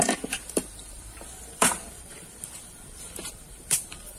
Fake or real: fake